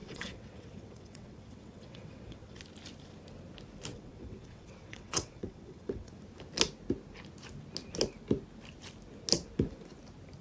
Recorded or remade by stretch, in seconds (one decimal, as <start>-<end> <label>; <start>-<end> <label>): 0.0-2.6 remade; 2.6-3.9 recorded; 3.9-6.1 remade; 6.1-10.4 recorded